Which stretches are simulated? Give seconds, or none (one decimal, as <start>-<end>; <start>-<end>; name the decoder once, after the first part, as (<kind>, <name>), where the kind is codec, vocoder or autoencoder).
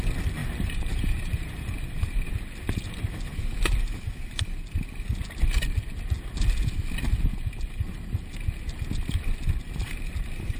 0.4-2.3 (vocoder, BigVGAN v2)